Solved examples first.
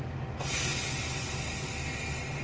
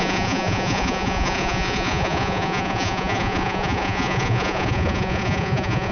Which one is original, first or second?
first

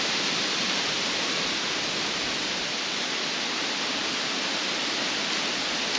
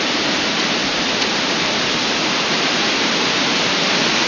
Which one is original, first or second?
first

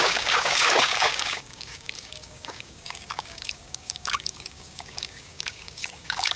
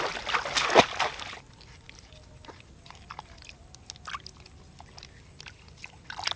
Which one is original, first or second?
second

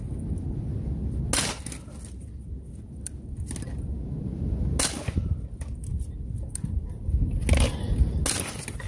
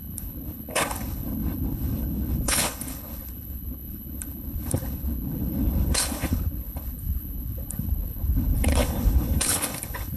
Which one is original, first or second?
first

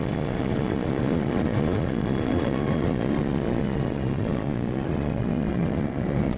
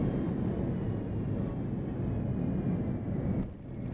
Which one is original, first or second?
second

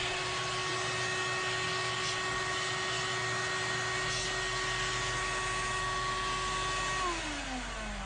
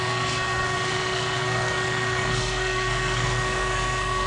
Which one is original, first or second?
first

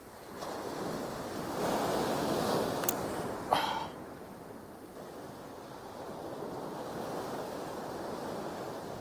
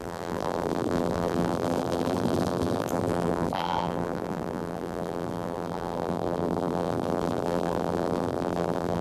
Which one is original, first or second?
first